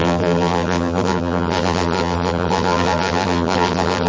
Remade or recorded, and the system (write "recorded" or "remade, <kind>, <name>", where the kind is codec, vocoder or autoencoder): remade, vocoder, BigVGAN v2